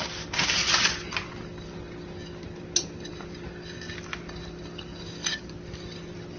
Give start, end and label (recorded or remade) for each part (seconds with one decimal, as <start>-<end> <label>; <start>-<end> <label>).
0.0-5.3 recorded; 5.3-5.8 remade; 5.8-6.4 recorded